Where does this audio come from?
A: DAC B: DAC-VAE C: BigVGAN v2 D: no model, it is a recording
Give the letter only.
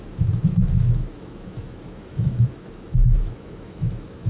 B